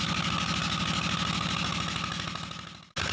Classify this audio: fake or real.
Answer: real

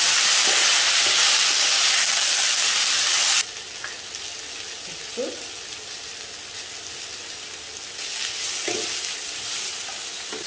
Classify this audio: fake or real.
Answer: real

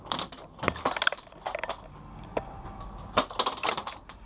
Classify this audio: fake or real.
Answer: real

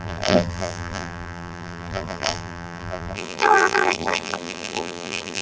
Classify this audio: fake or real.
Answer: fake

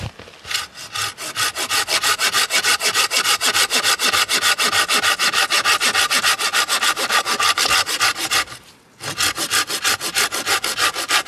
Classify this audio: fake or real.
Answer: real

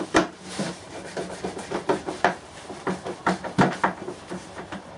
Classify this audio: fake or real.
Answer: fake